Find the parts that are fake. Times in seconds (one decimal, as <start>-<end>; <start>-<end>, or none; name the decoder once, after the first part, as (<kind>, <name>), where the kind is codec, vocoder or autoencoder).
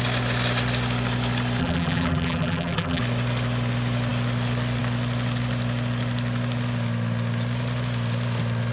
1.6-3.0 (vocoder, BigVGAN v2)